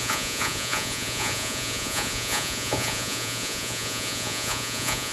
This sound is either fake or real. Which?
fake